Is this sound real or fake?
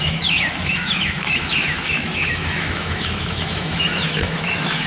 fake